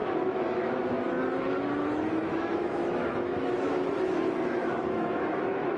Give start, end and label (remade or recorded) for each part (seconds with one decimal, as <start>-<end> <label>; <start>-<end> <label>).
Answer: 0.0-1.1 remade; 1.1-2.2 recorded; 2.2-5.8 remade